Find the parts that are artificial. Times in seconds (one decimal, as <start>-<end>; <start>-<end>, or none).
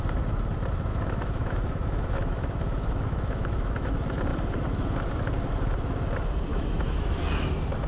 0.9-3.9; 6.5-7.2